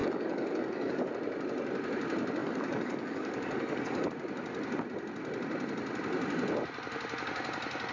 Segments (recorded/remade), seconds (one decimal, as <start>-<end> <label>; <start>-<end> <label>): 0.0-1.1 remade; 1.1-2.4 recorded; 2.4-4.1 remade; 4.1-7.9 recorded